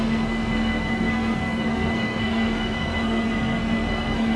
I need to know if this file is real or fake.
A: fake